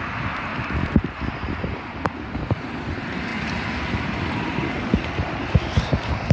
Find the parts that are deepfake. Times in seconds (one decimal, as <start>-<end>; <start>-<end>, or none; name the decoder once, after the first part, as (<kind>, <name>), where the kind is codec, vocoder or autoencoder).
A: 0.5-2.6 (vocoder, BigVGAN v2)

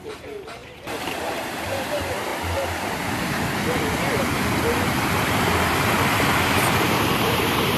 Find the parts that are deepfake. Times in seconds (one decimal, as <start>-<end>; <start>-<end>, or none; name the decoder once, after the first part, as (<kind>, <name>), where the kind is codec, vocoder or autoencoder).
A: 0.0-2.3 (vocoder, BigVGAN v2); 7.0-7.8

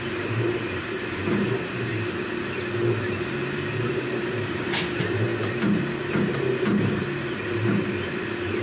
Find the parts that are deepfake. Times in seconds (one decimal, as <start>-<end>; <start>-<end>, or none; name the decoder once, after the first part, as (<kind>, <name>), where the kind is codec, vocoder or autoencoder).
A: 0.0-1.9 (vocoder, BigVGAN v2); 3.0-5.3; 6.9-8.6